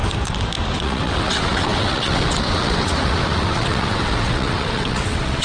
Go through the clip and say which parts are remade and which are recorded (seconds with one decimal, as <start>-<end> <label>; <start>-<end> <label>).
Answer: 0.0-0.8 recorded; 0.8-5.4 remade